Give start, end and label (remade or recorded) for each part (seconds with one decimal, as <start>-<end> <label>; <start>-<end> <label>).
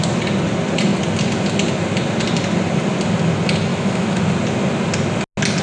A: 0.0-3.7 recorded; 3.7-4.2 remade; 4.2-5.6 recorded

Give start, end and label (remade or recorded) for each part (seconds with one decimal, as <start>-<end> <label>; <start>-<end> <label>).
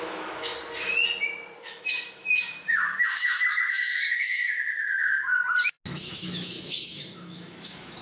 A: 0.0-0.5 remade; 0.5-1.6 recorded; 1.6-5.3 remade; 5.3-5.9 recorded; 5.9-8.0 remade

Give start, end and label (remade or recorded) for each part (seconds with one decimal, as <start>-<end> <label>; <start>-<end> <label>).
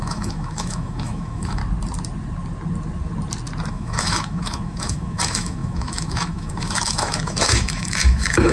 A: 0.0-1.6 remade; 1.6-3.7 recorded; 3.7-8.5 remade